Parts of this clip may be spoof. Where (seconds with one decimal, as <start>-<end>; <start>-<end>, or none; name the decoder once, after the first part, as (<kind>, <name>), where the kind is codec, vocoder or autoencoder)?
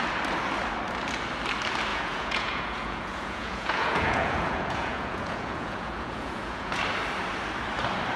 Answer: 1.9-6.8 (vocoder, Vocos)